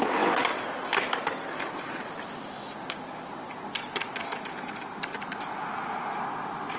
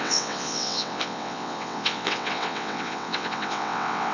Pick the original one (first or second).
first